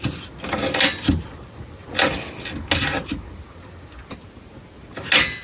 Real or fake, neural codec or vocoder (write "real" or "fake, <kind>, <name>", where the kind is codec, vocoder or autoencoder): real